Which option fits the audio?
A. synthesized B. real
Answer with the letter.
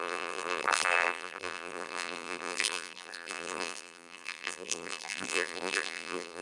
A